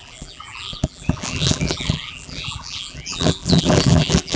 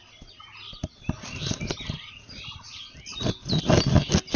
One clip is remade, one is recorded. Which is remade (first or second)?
first